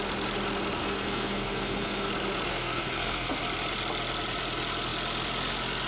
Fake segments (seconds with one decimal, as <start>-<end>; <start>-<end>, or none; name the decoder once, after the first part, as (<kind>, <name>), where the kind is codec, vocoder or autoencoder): 0.8-2.1 (codec, SNAC); 2.5-3.4